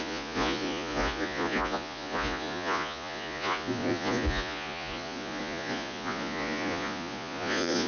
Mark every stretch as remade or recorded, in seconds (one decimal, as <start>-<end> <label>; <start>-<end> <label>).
0.0-7.9 remade